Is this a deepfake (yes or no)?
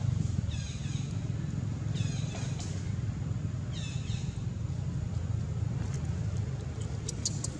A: no